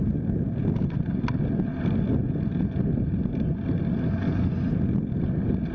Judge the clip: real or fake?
real